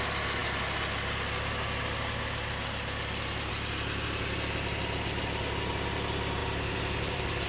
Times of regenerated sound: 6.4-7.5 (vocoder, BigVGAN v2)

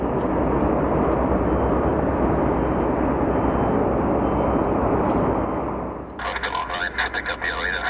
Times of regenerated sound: none

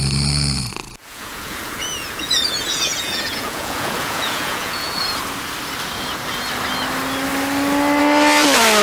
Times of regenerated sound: 1.0-5.0 (vocoder, Vocos)

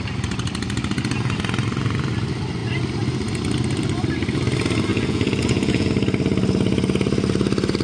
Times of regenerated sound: 4.9-5.9 (vocoder, Vocos)

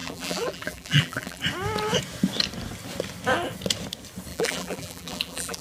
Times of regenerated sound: 0.0-1.4 (vocoder, BigVGAN v2); 4.3-5.6

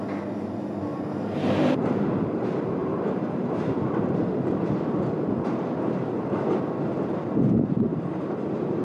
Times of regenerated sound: 0.9-2.4 (vocoder, BigVGAN v2); 2.8-4.5

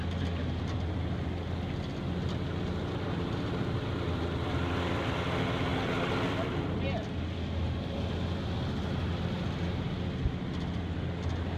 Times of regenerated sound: none